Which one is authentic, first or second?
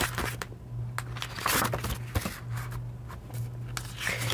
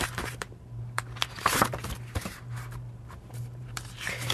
first